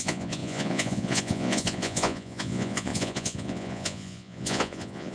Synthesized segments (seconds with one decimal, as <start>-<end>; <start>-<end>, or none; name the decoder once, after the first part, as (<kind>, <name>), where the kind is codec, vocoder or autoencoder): 0.0-5.1 (vocoder, Vocos)